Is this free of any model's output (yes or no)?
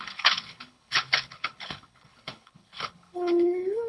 no